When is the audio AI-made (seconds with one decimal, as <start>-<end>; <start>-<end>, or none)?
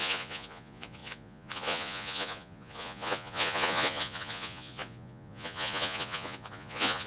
0.0-7.1